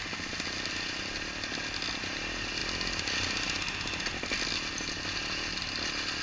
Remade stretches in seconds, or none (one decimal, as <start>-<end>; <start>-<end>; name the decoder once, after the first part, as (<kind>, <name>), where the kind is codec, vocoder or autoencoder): none